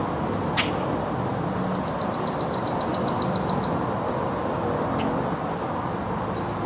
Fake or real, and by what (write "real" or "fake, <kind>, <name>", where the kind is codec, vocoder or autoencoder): real